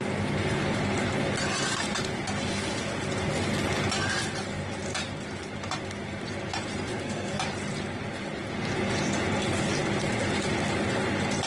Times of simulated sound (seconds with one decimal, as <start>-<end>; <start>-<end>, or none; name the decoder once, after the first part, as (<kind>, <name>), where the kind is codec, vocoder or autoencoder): 6.9-7.4 (codec, SNAC)

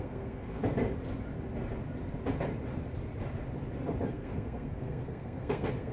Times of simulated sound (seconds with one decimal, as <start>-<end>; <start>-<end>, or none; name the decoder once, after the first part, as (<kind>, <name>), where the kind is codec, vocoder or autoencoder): 0.0-0.6 (codec, SNAC); 4.1-5.9

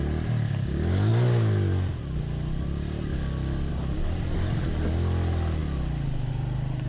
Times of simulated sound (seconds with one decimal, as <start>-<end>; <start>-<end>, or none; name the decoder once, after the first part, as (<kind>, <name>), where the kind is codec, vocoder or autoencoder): none

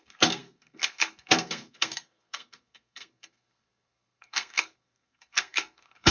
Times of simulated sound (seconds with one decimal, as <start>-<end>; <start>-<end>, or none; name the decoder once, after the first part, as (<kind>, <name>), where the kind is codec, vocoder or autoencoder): 0.0-6.1 (codec, SNAC)

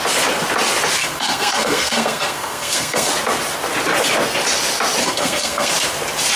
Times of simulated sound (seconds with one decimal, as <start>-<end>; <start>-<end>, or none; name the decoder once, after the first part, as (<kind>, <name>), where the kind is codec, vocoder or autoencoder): 1.0-3.1 (codec, SNAC); 5.0-5.7

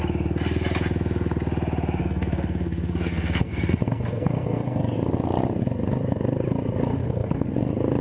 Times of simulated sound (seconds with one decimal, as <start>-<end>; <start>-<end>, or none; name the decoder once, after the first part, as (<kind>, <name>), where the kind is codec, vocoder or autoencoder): 2.0-4.8 (codec, SNAC); 6.9-7.5

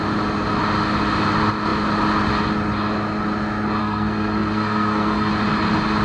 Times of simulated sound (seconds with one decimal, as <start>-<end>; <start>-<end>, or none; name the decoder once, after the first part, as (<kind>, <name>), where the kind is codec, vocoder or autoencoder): 3.8-5.3 (codec, SNAC)